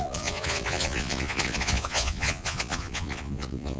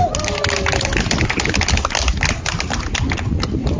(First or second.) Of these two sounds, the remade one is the first